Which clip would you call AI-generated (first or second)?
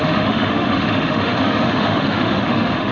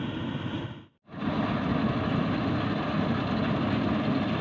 first